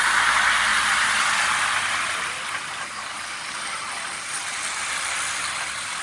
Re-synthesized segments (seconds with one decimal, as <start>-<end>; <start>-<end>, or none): none